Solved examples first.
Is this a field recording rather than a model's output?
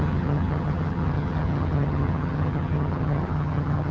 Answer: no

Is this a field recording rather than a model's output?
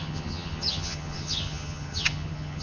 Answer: no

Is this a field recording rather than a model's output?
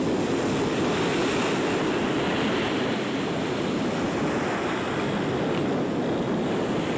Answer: yes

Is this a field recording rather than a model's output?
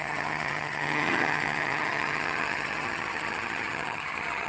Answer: no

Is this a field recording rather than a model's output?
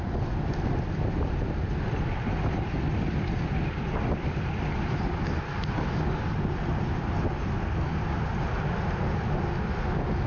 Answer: yes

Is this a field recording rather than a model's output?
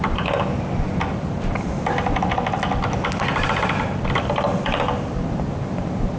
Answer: yes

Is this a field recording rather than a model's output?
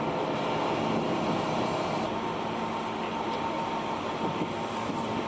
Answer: yes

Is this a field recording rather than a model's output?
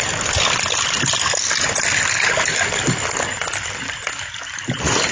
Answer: yes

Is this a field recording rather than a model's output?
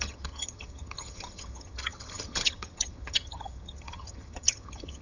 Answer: no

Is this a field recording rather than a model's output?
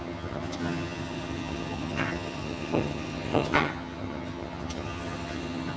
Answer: no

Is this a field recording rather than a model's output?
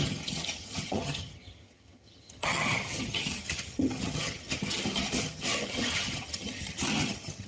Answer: no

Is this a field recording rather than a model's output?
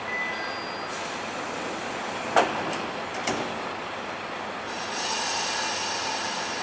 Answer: yes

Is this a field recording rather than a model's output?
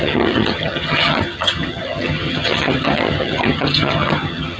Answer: no